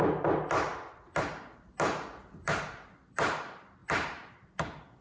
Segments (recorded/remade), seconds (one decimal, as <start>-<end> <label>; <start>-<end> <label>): 0.0-5.0 recorded